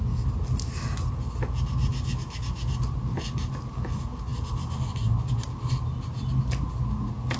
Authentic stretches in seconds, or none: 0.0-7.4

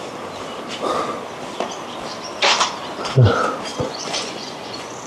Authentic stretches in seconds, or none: 0.0-3.7

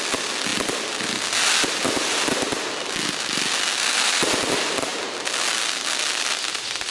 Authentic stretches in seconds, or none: 0.0-6.9

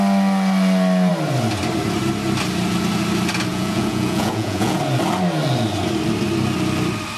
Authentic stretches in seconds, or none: 0.0-3.5; 4.8-7.2